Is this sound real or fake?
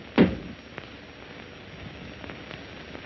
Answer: real